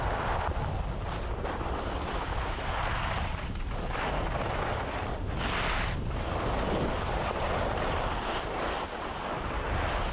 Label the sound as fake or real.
real